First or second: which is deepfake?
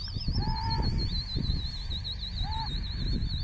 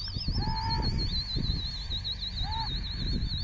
first